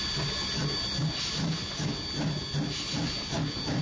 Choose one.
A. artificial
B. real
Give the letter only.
B